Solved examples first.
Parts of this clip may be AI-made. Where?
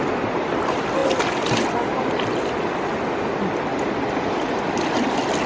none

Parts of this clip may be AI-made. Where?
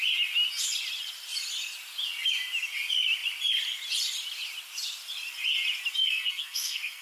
6.0-7.0 (codec, SNAC)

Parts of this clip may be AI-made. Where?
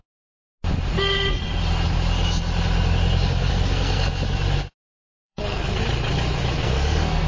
3.5-4.1 (codec, SNAC); 5.2-5.8; 6.6-7.3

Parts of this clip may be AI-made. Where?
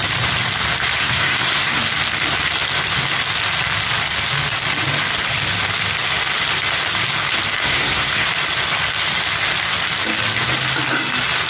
1.0-1.8 (codec, SNAC); 7.6-8.3